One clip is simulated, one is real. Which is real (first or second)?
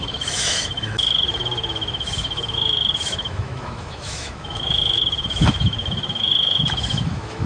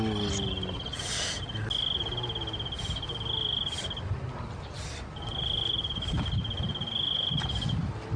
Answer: second